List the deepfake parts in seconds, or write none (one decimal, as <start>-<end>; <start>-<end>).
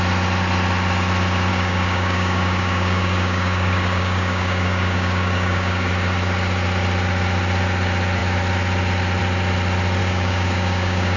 1.5-5.9; 10.0-11.2